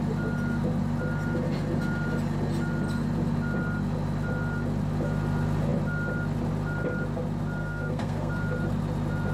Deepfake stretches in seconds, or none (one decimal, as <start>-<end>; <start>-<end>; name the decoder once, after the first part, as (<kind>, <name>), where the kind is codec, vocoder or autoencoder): 7.6-8.3 (codec, SNAC)